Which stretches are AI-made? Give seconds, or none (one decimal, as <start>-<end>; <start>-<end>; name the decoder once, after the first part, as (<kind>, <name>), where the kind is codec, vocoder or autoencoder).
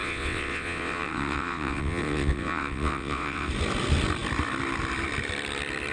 0.0-3.5 (vocoder, WaveNeXt)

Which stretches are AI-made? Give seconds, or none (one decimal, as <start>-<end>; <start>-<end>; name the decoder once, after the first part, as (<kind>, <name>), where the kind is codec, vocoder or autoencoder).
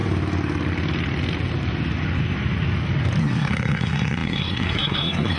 3.2-5.4 (codec, SNAC)